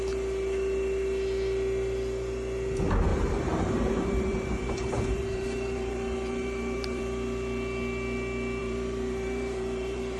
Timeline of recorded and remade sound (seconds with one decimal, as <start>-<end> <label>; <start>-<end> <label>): 0.0-3.1 recorded; 3.1-7.0 remade; 7.0-8.6 recorded; 8.6-10.2 remade